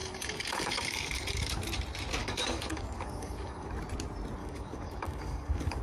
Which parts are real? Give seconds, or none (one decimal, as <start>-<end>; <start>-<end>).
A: 1.5-2.2; 3.7-4.4